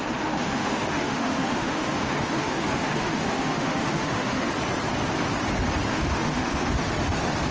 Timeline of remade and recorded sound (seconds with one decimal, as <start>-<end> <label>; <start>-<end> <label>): 0.0-4.5 remade; 4.5-5.9 recorded; 5.9-6.7 remade; 6.7-7.5 recorded